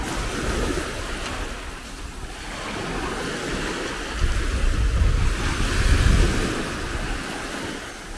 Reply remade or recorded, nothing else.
recorded